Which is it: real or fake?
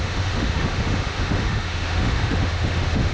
fake